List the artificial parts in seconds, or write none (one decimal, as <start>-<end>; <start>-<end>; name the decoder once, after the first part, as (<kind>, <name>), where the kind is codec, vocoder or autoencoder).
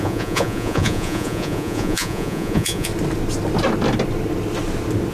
0.0-2.9 (vocoder, Vocos)